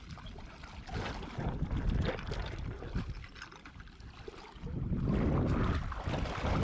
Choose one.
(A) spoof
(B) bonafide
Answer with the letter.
B